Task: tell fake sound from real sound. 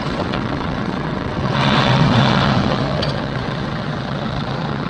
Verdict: fake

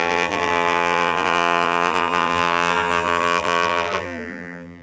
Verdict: fake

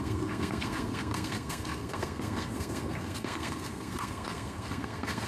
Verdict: fake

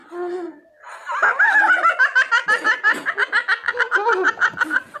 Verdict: real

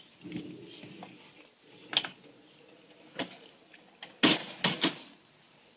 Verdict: real